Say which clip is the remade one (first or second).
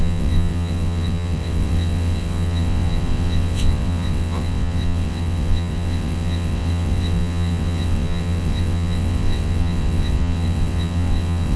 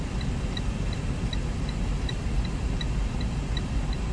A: first